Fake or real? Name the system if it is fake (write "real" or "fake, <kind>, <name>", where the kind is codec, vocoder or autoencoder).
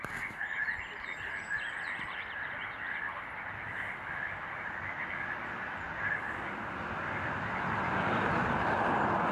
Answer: real